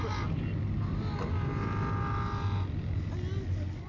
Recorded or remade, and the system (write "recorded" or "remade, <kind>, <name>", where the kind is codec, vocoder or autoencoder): recorded